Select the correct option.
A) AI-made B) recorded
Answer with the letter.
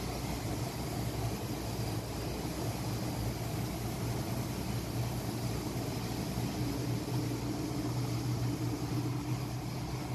B